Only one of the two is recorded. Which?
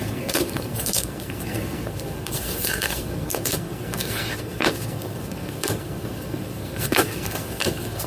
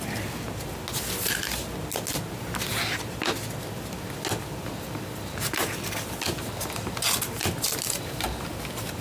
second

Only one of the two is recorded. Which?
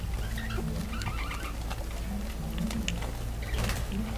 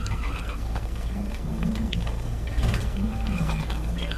first